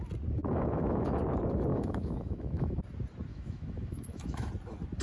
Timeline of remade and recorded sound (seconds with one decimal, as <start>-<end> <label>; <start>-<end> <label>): 0.0-0.4 recorded; 0.4-1.2 remade; 1.2-1.7 recorded; 1.7-2.8 remade; 2.8-3.3 recorded; 3.3-4.5 remade; 4.5-5.0 recorded

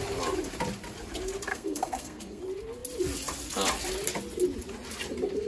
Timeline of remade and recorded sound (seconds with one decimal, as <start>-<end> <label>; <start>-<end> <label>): 0.0-1.5 recorded; 1.5-2.4 remade; 2.4-5.5 recorded

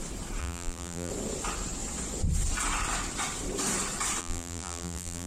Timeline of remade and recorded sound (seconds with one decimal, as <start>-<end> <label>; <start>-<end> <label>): 0.0-0.4 recorded; 0.4-1.1 remade; 1.1-4.2 recorded; 4.2-5.3 remade

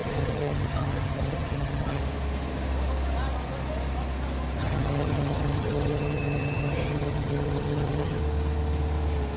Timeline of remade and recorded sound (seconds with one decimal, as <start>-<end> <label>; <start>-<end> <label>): 0.0-2.0 remade; 2.0-4.6 recorded; 4.6-8.2 remade; 8.2-9.4 recorded

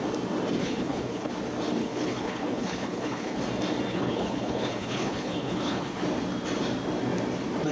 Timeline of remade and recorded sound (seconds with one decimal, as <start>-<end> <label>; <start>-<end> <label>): 0.0-0.6 recorded; 0.6-1.3 remade; 1.3-1.8 recorded; 1.8-3.4 remade; 3.4-3.9 recorded; 3.9-6.0 remade; 6.0-7.7 recorded

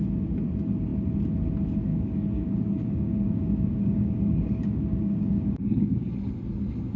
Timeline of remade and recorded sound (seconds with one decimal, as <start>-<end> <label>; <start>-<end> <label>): 0.0-1.9 recorded; 1.9-6.1 remade; 6.1-7.0 recorded